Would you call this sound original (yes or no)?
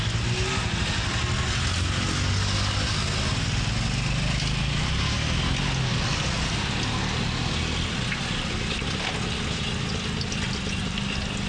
yes